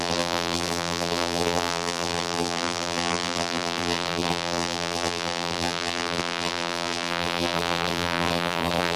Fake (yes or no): yes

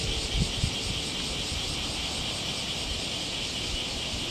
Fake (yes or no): no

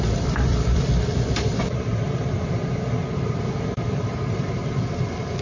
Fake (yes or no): yes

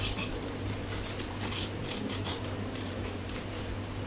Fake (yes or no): yes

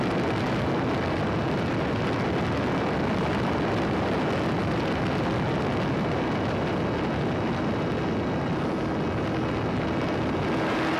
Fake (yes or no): no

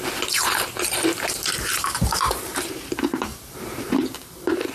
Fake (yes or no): yes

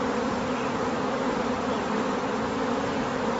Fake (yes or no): yes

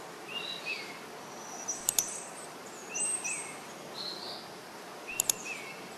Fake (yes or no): no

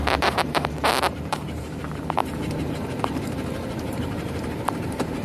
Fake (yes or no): yes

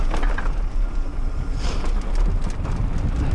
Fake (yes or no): no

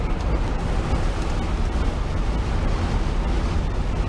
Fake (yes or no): no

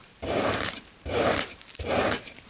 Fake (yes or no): yes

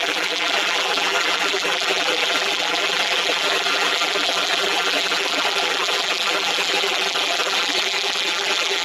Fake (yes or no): yes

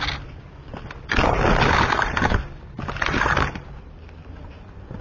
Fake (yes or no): yes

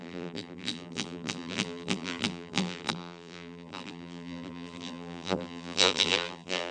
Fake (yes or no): yes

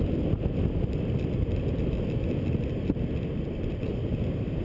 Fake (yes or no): no